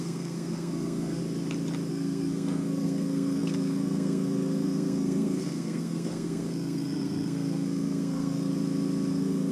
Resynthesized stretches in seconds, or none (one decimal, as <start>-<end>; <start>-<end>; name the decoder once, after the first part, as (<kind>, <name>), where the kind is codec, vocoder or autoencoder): 0.0-1.2 (codec, SNAC); 1.9-8.5; 9.1-9.5